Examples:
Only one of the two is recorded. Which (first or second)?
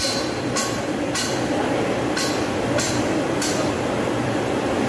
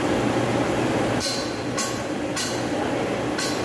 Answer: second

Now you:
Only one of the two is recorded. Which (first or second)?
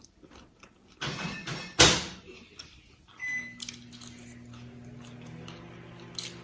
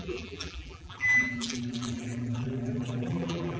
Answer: first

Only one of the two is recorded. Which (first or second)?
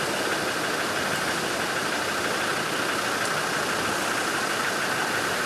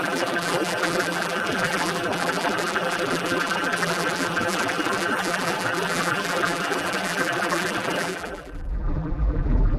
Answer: first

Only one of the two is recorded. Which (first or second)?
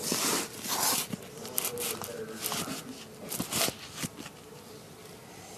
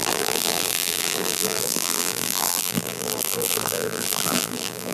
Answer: first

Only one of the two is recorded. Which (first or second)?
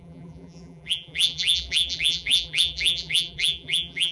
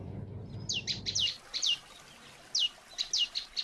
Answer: second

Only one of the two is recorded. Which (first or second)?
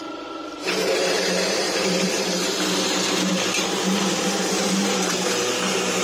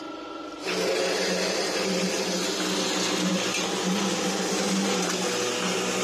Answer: second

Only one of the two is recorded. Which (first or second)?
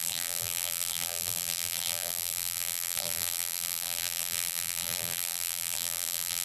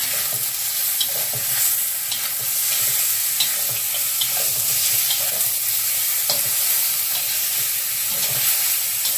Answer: second